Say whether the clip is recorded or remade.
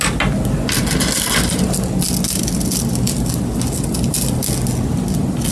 recorded